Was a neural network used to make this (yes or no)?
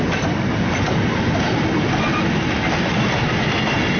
no